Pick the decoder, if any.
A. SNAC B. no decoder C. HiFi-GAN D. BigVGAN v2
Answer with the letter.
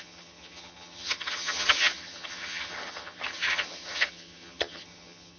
C